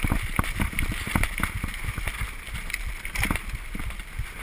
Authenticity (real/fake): real